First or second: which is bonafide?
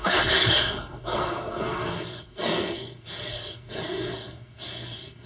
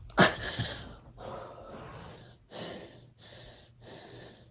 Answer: second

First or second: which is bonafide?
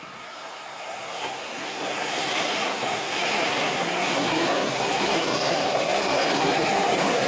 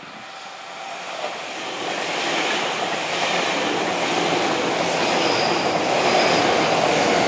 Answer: second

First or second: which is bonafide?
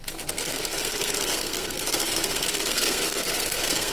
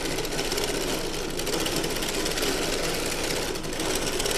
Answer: second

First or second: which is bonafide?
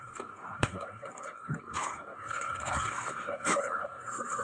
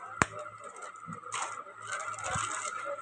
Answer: second